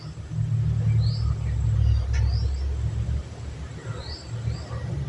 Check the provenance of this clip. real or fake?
real